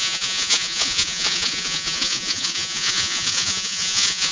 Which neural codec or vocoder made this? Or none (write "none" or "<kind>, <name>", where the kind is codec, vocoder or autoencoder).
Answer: vocoder, Vocos